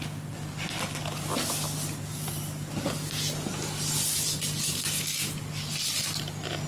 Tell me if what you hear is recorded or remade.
recorded